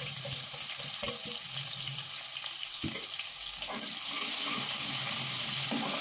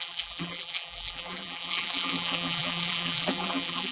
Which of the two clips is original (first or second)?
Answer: first